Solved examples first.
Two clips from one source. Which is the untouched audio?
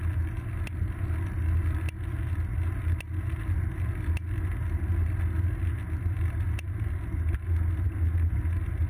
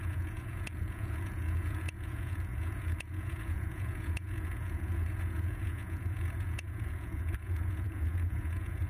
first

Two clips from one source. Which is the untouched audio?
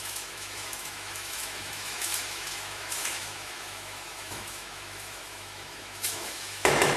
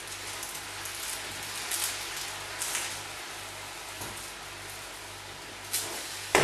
second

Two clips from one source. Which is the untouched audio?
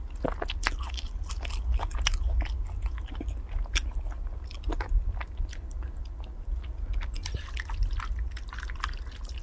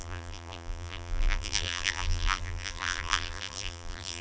first